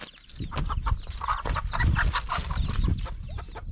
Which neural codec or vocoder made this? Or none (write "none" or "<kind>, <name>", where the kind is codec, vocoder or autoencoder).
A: none